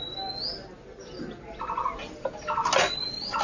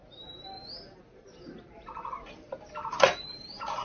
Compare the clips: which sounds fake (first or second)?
second